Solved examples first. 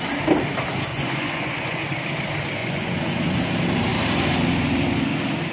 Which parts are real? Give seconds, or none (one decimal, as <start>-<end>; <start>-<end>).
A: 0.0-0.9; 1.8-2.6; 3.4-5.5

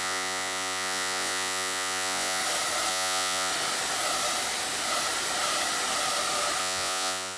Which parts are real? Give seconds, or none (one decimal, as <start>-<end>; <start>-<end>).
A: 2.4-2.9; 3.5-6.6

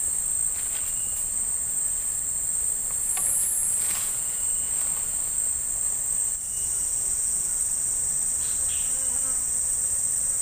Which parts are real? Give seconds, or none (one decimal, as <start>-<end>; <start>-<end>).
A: 0.0-3.6; 4.7-6.8; 7.6-10.4